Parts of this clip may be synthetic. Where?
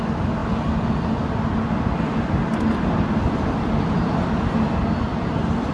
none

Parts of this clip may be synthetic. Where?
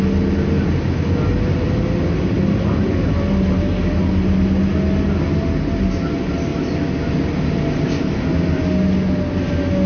none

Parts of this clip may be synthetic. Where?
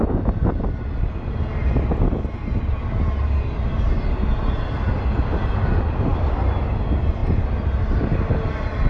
none